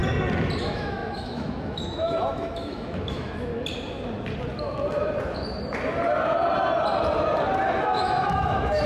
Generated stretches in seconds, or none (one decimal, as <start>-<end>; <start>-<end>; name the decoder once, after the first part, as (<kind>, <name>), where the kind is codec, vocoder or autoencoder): 0.6-3.5 (autoencoder, DAC-VAE); 7.8-8.9